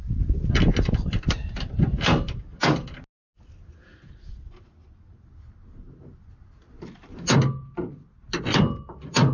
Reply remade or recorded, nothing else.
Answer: recorded